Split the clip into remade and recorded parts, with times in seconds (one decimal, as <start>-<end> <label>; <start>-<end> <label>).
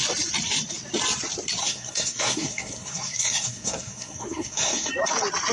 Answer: 0.0-1.6 recorded; 1.6-4.9 remade; 4.9-5.5 recorded